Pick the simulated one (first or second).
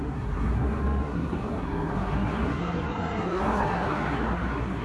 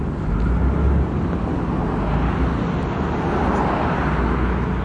first